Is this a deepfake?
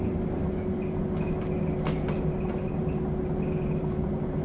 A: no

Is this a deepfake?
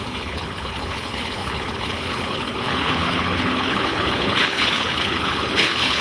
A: yes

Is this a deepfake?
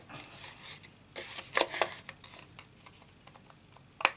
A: no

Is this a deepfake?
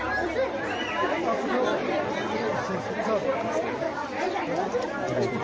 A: no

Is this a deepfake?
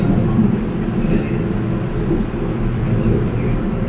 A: no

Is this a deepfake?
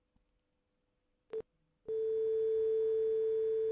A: no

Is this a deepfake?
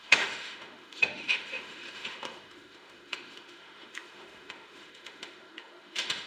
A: yes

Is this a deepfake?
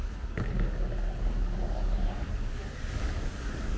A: yes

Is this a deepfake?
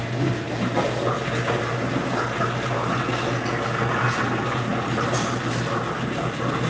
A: no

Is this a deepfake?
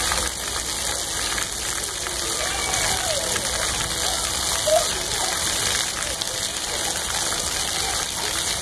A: no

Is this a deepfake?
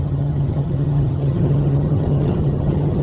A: yes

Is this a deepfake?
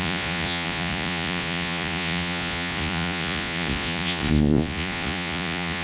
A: yes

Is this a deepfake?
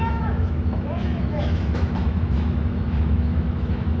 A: yes